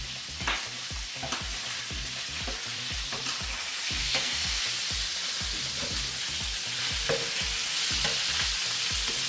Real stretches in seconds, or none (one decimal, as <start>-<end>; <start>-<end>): 0.0-4.0; 4.6-9.3